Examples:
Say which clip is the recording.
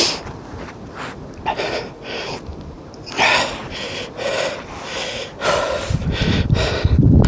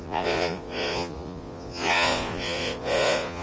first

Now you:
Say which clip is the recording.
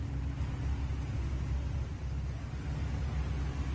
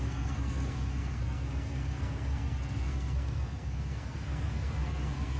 first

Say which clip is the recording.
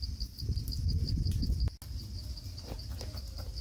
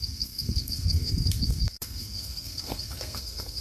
first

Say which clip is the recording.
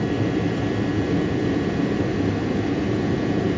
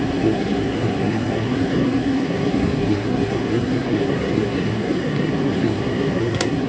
first